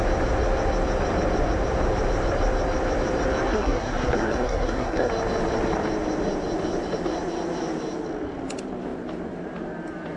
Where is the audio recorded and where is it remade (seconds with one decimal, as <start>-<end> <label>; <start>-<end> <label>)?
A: 0.0-3.5 recorded; 3.5-5.1 remade; 5.1-10.2 recorded